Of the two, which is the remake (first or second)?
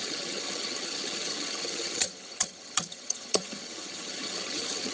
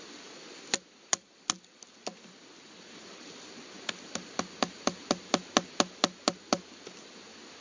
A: first